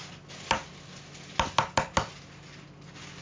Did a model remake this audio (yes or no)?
no